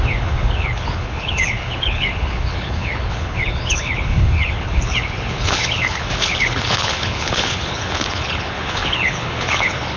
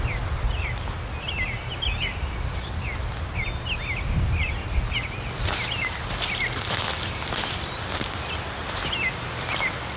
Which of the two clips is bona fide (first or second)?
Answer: second